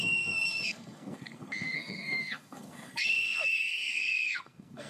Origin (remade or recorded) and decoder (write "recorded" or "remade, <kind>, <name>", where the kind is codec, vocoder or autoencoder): remade, codec, SNAC